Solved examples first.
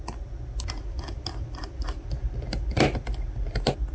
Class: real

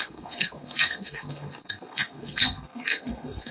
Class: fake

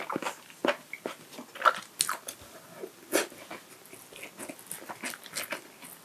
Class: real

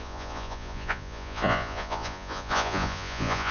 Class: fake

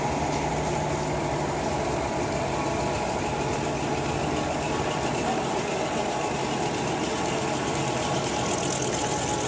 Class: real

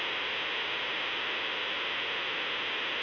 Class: real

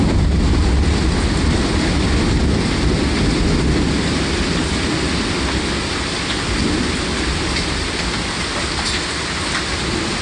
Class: real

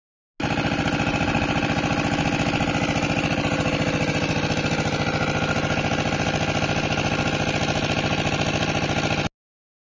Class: real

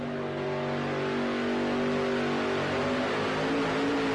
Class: real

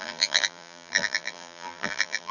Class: fake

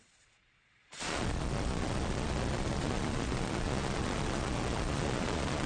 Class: fake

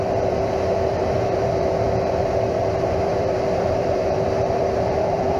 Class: fake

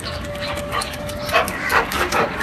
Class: fake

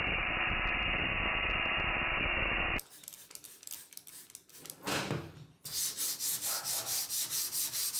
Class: real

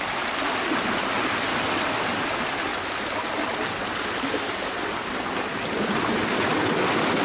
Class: real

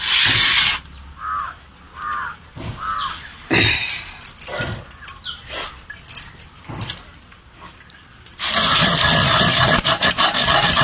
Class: real